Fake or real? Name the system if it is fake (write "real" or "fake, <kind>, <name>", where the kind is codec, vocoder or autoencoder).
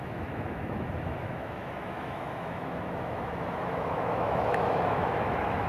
fake, autoencoder, DAC-VAE